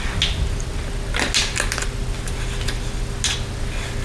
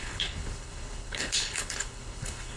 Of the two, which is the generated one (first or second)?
second